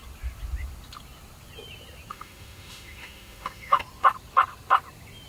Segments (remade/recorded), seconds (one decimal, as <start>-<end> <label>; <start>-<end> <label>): 0.0-2.1 recorded; 2.1-3.8 remade; 3.8-5.3 recorded